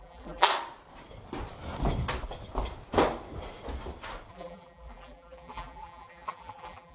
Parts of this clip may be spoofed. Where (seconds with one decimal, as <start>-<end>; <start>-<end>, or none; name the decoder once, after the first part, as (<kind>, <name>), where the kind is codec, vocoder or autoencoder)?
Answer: 0.0-0.5 (vocoder, BigVGAN v2); 4.3-6.9